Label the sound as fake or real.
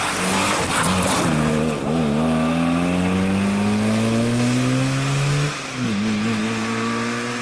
real